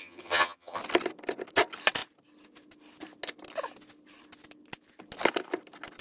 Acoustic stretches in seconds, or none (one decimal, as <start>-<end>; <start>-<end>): 0.8-6.0